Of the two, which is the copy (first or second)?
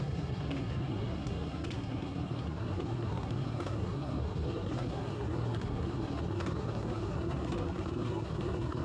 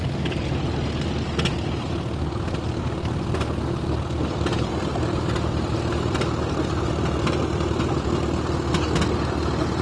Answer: first